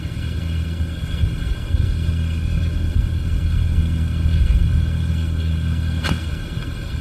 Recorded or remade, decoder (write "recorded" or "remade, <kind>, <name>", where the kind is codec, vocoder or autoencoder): remade, codec, SNAC